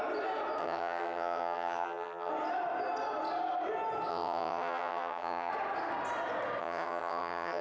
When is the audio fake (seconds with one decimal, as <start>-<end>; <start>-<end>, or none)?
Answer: 0.6-2.3; 4.1-5.5; 6.6-7.6